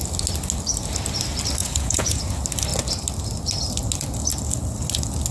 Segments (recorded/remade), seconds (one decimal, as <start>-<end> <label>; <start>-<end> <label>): 0.0-1.6 recorded; 1.6-2.2 remade; 2.2-5.3 recorded